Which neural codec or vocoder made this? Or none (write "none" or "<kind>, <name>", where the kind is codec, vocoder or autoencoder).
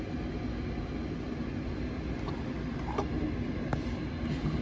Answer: none